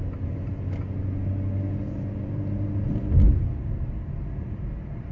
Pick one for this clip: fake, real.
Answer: real